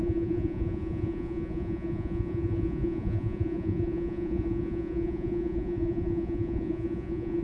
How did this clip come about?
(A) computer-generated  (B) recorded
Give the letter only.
A